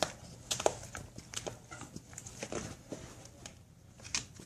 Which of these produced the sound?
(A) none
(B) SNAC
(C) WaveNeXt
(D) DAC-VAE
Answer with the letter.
A